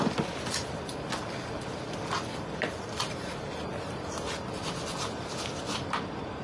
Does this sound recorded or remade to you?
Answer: recorded